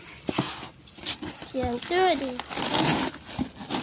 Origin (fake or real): real